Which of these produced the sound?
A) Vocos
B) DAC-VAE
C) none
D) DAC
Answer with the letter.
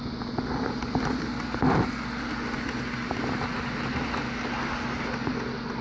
C